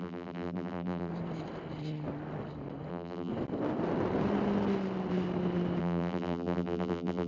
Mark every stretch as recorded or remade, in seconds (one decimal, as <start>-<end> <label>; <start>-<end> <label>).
0.0-1.1 remade; 1.1-2.9 recorded; 2.9-3.3 remade; 3.3-5.8 recorded; 5.8-7.3 remade